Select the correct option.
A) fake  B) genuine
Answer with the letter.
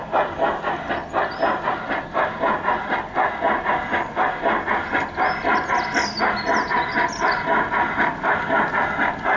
B